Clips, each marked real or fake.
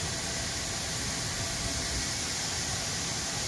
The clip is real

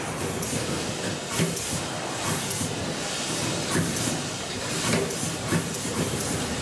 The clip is real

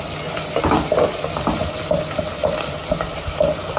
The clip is real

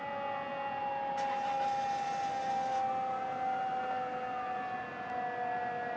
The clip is real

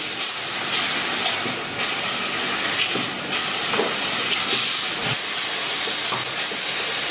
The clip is real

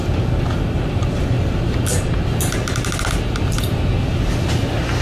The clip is real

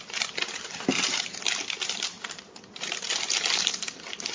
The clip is real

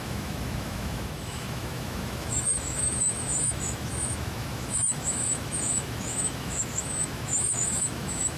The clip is fake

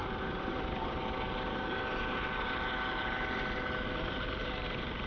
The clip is real